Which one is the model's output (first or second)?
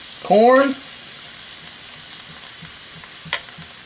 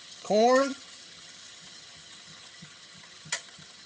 second